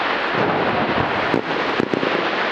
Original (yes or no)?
yes